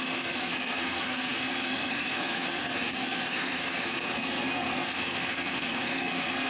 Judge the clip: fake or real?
fake